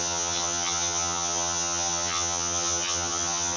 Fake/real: fake